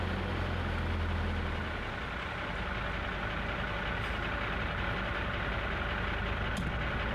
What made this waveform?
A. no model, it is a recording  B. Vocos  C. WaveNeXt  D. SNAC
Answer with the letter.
A